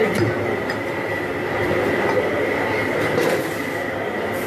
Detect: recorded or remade recorded